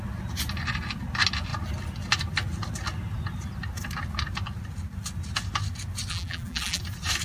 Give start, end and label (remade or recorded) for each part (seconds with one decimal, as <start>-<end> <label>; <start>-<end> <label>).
0.0-6.1 recorded; 6.1-6.8 remade; 6.8-7.2 recorded